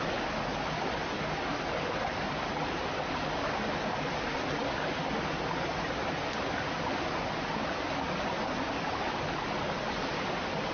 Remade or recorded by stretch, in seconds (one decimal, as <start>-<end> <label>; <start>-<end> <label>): 0.0-10.7 recorded

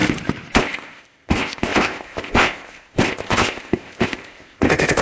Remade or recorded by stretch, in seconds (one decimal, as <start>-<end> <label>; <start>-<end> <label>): 0.0-0.6 recorded; 0.6-5.0 remade

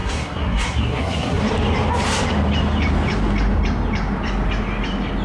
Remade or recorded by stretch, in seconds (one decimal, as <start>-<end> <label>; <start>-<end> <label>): 0.0-1.4 remade; 1.4-5.2 recorded

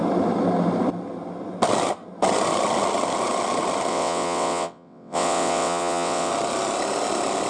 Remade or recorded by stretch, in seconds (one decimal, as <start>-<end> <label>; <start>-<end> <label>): 0.0-3.9 recorded; 3.9-6.3 remade; 6.3-7.5 recorded

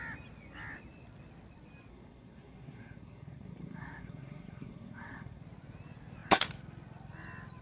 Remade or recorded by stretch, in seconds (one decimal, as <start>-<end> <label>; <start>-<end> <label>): 0.0-1.9 recorded; 1.9-5.4 remade; 5.4-7.6 recorded

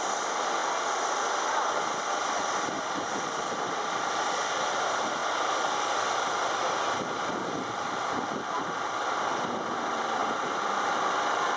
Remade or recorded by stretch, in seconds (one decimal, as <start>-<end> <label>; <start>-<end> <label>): 0.0-5.2 remade; 5.2-7.7 recorded; 7.7-11.6 remade